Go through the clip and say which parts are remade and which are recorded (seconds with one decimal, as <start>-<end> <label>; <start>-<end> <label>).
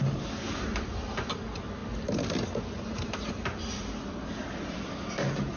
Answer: 0.0-5.6 recorded